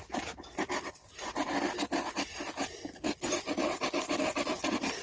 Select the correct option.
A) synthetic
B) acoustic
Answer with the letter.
B